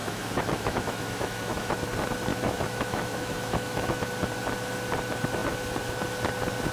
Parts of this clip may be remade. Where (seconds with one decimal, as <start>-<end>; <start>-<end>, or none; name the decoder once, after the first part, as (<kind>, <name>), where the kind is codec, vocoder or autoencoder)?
0.0-1.7 (autoencoder, DAC-VAE); 2.3-4.1